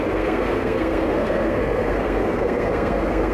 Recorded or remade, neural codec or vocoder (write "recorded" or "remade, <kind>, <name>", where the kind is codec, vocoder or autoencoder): remade, codec, SNAC